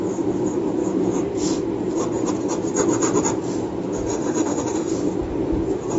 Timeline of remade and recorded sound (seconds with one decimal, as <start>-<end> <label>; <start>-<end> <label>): 0.0-4.1 recorded; 4.1-4.9 remade; 4.9-6.0 recorded